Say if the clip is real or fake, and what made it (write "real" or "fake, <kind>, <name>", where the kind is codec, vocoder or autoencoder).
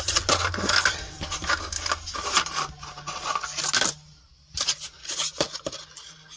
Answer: real